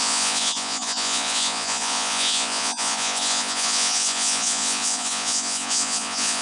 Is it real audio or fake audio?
fake